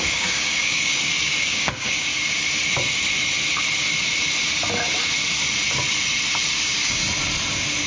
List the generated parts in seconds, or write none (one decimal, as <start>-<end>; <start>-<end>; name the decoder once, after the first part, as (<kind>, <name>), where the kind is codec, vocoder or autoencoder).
0.0-2.1 (codec, DAC); 6.5-7.0